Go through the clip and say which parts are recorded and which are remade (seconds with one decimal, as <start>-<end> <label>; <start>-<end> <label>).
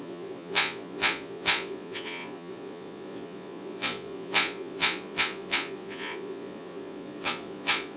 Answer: 0.0-8.0 remade